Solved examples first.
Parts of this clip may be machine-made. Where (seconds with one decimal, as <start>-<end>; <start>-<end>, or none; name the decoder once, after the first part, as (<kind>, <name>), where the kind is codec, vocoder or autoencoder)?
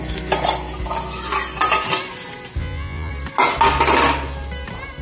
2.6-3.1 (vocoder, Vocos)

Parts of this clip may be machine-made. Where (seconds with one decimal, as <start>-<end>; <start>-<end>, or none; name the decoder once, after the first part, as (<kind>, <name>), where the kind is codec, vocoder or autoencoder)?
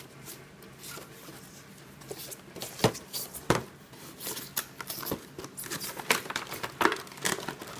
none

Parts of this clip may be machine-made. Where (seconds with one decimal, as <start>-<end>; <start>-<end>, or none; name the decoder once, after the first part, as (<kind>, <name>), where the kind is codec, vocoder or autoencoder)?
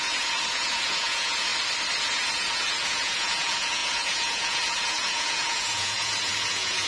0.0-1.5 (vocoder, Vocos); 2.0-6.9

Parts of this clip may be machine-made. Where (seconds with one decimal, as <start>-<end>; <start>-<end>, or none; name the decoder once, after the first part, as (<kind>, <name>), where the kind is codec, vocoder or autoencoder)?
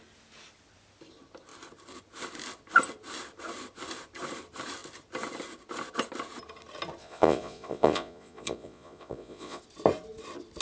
7.0-9.6 (vocoder, Vocos)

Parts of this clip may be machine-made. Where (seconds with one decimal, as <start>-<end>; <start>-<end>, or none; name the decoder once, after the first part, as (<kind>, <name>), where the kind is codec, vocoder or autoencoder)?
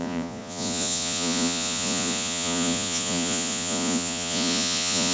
0.0-5.1 (vocoder, Vocos)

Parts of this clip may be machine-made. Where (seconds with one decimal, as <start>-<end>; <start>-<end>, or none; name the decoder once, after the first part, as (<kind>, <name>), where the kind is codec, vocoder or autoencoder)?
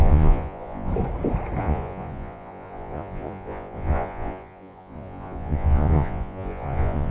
0.0-0.9 (vocoder, Vocos); 1.6-7.1